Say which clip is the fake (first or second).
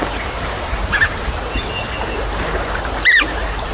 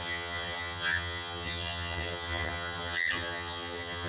second